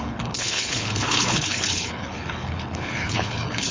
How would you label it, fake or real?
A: fake